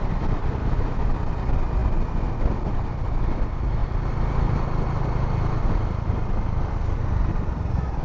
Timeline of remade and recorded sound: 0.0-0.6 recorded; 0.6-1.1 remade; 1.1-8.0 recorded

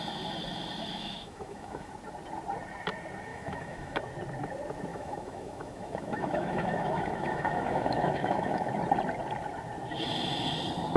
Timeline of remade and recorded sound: 0.0-0.9 recorded; 0.9-1.9 remade; 1.9-3.3 recorded; 3.3-4.0 remade; 4.0-4.9 recorded; 4.9-8.7 remade; 8.7-11.0 recorded

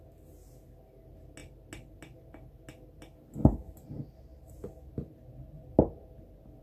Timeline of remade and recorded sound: 0.0-6.6 recorded

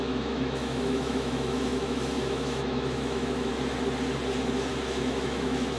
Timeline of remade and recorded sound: 0.0-3.5 remade; 3.5-4.7 recorded; 4.7-5.8 remade

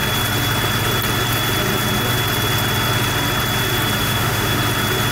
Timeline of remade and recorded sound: 0.0-4.0 recorded; 4.0-4.6 remade; 4.6-5.1 recorded